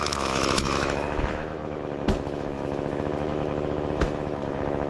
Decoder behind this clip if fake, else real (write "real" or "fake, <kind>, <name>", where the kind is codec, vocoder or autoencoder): fake, autoencoder, DAC-VAE